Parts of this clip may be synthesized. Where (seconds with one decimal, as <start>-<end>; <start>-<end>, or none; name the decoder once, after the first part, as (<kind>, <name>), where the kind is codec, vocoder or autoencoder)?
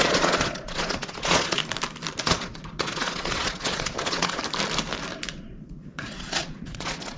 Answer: 0.0-1.6 (vocoder, Vocos); 2.2-4.4; 5.3-7.2